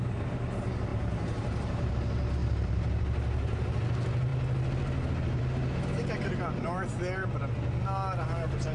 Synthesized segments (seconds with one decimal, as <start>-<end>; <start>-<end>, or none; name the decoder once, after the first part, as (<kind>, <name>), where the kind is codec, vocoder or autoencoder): 0.9-1.9 (vocoder, BigVGAN v2); 2.4-3.0